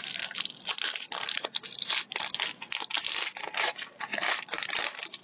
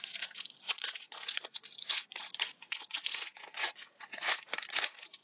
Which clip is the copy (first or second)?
second